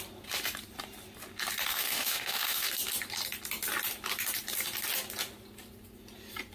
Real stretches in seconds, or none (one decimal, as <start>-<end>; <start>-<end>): 0.0-1.7; 2.7-6.5